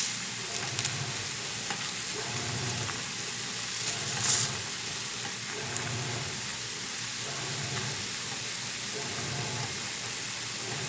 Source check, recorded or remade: recorded